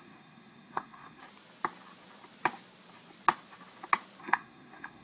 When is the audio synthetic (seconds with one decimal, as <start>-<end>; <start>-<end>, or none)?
0.0-1.2; 4.2-5.0